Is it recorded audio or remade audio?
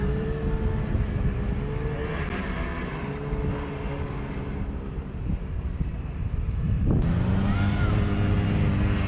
recorded